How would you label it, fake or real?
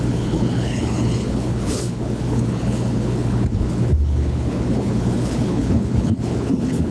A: fake